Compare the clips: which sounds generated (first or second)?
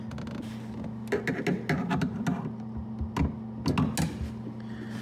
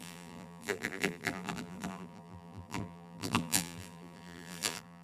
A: second